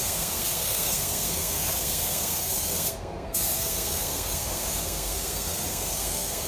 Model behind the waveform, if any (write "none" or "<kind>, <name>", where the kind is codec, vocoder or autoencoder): codec, SNAC